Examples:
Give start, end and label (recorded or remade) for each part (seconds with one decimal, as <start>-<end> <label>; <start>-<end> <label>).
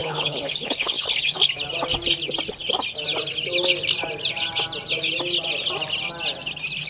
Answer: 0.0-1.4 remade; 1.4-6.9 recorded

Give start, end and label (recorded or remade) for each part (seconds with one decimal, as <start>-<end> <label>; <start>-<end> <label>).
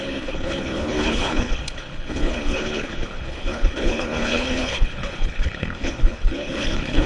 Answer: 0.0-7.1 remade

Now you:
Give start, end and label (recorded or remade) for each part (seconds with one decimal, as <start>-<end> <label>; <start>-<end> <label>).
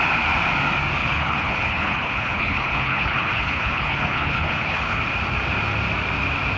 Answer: 0.0-1.0 recorded; 1.0-5.0 remade; 5.0-6.6 recorded